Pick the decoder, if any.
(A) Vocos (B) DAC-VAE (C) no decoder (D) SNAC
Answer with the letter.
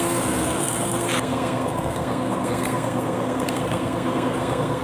D